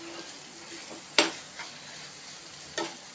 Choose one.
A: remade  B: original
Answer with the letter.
A